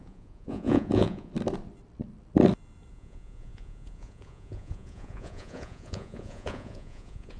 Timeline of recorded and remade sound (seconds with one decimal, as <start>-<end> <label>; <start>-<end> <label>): 0.0-1.3 remade; 1.3-2.9 recorded; 2.9-7.4 remade